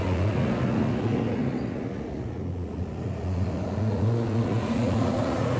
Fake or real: fake